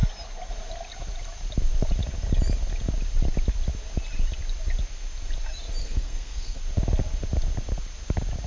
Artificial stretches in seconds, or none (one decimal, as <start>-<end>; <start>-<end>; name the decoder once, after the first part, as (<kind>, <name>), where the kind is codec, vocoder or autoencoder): 5.8-6.6 (codec, SNAC)